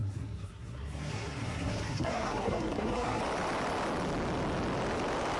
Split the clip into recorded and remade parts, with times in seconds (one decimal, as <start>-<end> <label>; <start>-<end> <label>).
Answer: 0.0-3.2 remade; 3.2-5.4 recorded